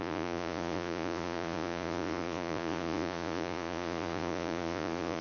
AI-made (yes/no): yes